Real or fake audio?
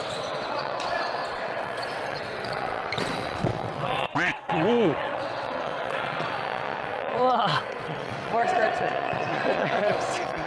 fake